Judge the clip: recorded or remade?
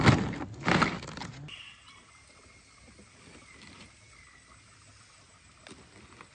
recorded